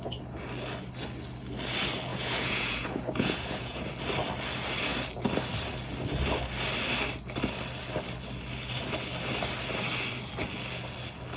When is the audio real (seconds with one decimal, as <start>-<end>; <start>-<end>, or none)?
0.0-2.1; 3.8-11.4